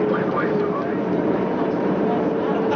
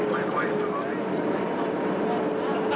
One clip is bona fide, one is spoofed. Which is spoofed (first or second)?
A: first